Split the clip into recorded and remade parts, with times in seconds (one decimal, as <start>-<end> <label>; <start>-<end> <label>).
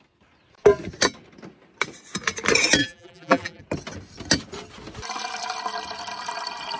0.0-2.8 recorded; 2.8-3.6 remade; 3.6-6.8 recorded